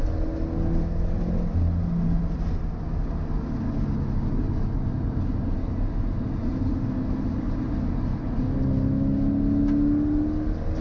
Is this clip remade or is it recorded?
recorded